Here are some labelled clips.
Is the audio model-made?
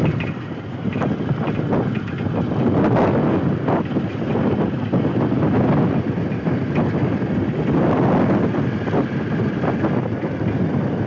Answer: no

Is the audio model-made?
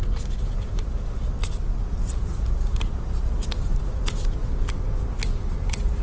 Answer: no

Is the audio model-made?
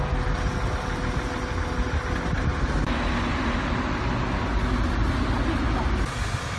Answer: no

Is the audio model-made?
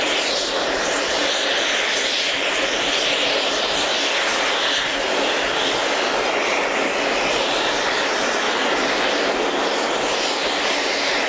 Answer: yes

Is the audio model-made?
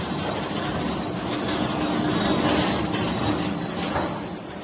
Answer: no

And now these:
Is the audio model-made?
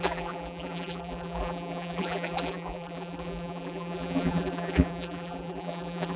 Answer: yes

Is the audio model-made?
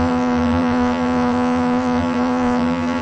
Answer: yes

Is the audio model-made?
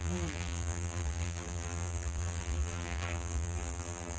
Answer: yes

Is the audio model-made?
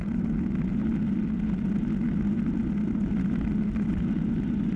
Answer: no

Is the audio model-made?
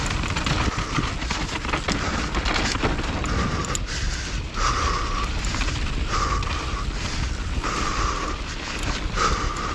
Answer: no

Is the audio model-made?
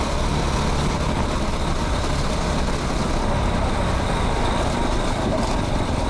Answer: yes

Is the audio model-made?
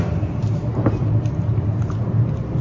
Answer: yes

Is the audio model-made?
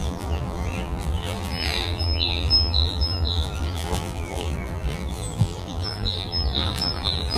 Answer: yes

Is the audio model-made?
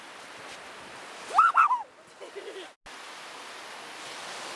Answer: no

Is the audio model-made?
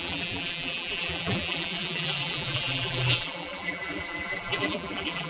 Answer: yes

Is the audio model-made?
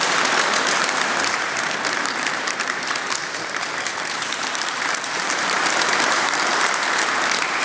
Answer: yes